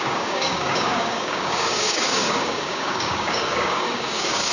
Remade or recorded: remade